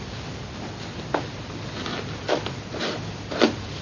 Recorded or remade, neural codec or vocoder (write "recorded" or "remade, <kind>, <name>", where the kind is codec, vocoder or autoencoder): recorded